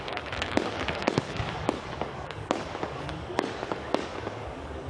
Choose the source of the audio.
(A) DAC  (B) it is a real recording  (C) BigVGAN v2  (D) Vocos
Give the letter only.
A